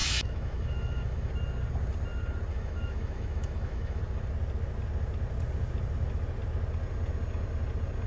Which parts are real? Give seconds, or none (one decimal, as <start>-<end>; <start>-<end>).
1.3-2.5; 4.0-8.1